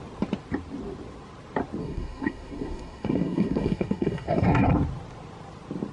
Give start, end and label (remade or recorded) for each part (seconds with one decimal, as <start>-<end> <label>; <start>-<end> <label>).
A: 0.0-1.8 recorded; 1.8-4.7 remade; 4.7-5.9 recorded